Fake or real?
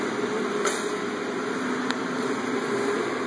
real